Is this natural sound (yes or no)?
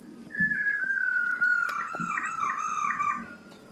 yes